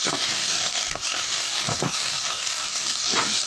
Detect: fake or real fake